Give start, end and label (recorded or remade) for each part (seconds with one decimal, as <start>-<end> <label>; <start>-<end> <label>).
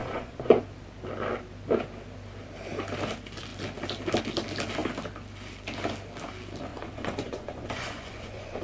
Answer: 0.0-0.6 remade; 0.6-6.7 recorded; 6.7-8.6 remade